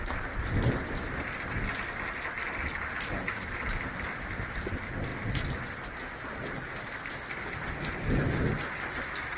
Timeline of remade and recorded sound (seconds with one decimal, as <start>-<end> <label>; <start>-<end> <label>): 0.0-9.4 recorded